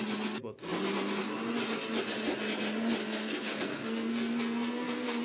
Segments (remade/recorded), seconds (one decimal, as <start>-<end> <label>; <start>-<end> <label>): 0.0-3.0 recorded; 3.0-5.2 remade